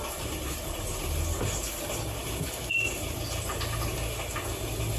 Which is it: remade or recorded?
recorded